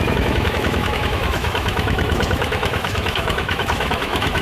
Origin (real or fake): fake